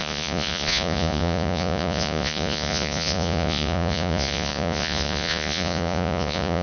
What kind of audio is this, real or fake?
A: fake